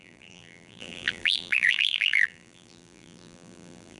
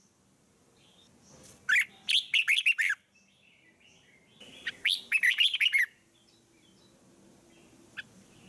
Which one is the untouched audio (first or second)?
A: second